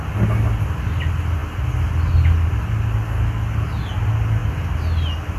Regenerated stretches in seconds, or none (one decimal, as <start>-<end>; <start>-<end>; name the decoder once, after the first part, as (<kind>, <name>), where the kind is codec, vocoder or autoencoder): none